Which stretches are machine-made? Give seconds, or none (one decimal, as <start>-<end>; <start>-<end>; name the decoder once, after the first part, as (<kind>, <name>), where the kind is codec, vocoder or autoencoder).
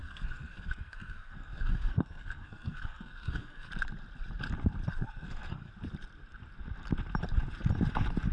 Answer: 0.0-3.7 (codec, SNAC); 4.9-5.7